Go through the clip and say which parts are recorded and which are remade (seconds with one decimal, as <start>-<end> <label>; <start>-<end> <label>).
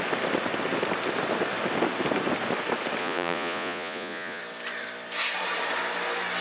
0.0-3.0 recorded; 3.0-4.4 remade; 4.4-6.4 recorded